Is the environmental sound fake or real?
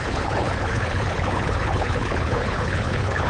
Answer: fake